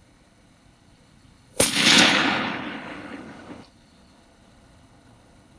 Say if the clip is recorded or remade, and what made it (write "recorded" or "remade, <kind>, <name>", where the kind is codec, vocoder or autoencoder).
remade, codec, HILCodec